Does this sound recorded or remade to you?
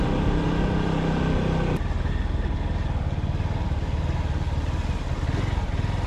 recorded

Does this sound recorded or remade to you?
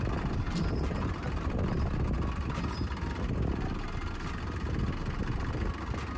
recorded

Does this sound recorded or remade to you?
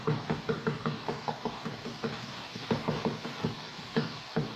remade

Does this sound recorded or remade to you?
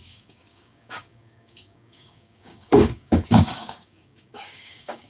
remade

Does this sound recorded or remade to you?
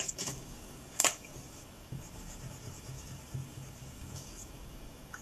remade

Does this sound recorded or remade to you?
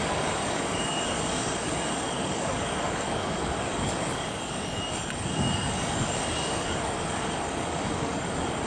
remade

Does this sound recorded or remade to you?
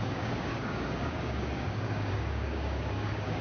remade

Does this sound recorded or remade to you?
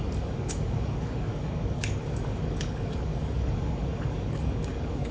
remade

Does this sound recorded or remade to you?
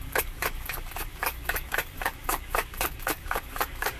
remade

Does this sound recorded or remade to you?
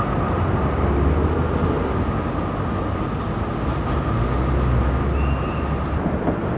recorded